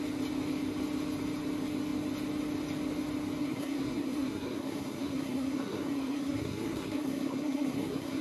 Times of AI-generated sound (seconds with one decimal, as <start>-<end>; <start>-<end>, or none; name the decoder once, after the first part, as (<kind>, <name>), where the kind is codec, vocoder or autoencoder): 3.4-8.2 (codec, SNAC)